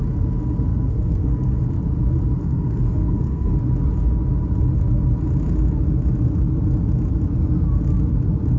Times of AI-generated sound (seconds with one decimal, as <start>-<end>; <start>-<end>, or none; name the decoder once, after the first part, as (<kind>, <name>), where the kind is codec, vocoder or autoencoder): 0.7-1.6 (codec, SNAC); 2.4-3.5